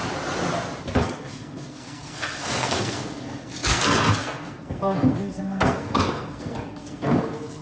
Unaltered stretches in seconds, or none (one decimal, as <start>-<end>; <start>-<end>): 0.0-0.9

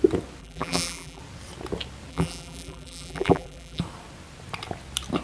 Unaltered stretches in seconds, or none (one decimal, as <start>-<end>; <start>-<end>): 0.0-0.4; 1.2-2.1; 3.8-5.2

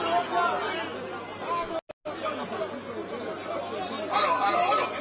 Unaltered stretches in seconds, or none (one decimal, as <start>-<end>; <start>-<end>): 0.0-5.0

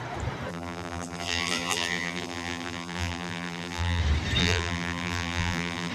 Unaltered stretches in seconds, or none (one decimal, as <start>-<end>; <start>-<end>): 0.0-0.5; 4.0-4.4

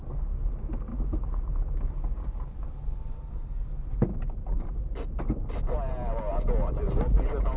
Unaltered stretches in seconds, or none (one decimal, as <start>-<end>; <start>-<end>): 0.0-7.6

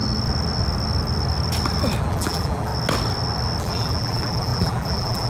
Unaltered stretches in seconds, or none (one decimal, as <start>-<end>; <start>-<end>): 0.0-2.0; 2.7-3.6